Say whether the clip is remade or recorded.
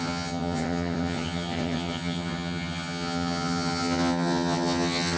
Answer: remade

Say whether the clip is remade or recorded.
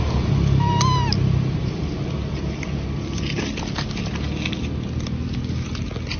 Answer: recorded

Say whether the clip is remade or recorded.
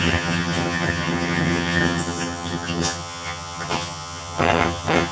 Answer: remade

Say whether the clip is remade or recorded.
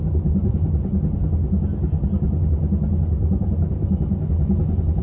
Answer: recorded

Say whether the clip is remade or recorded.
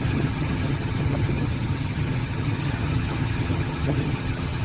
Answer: remade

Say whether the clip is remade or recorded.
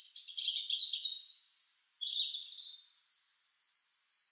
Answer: recorded